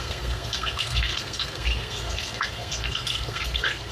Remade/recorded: remade